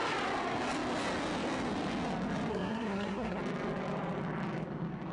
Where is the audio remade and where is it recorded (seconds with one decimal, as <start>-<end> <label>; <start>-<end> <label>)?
0.0-2.5 recorded; 2.5-3.4 remade; 3.4-5.1 recorded